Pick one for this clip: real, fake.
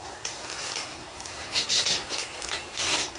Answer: fake